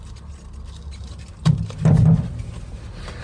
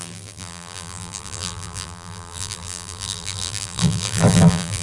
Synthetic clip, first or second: second